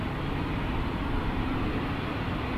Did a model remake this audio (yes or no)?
no